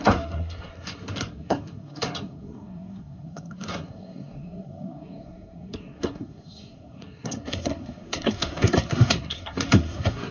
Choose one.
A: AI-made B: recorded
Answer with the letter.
A